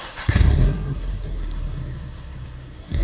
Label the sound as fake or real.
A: fake